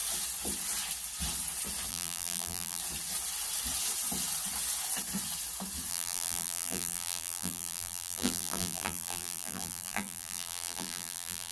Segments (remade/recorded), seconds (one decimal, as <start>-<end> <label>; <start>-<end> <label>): 0.0-1.9 recorded; 1.9-2.8 remade; 2.8-5.9 recorded; 5.9-11.5 remade